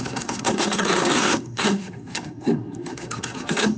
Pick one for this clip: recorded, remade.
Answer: remade